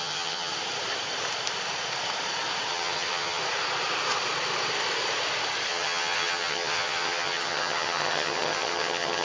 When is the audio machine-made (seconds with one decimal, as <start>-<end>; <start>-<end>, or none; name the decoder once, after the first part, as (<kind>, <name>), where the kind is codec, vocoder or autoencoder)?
0.0-0.5 (vocoder, HiFi-GAN); 2.7-3.4; 5.7-9.2